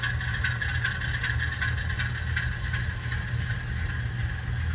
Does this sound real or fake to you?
real